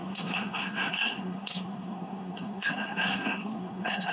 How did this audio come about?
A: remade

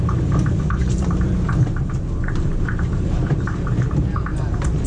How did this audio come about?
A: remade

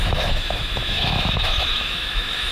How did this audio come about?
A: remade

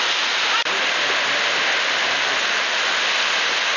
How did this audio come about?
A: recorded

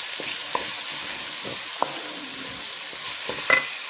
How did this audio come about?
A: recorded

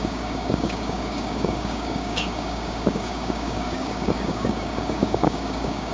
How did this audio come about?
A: remade